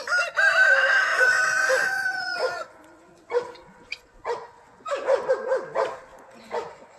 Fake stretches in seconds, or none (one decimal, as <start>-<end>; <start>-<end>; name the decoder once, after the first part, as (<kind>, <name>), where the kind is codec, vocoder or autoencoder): 1.1-5.3 (vocoder, Vocos); 6.1-7.0